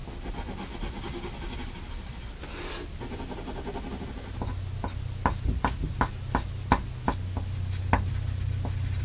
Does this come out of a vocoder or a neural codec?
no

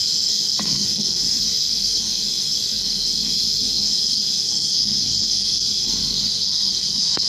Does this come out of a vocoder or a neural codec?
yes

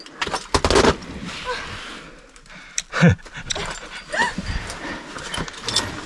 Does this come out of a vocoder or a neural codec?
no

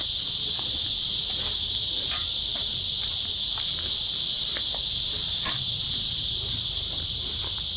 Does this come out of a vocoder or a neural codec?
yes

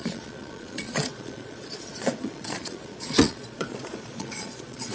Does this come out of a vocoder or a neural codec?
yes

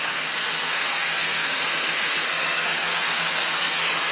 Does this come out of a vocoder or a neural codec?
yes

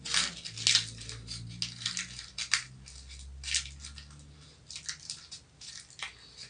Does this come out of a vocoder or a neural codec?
no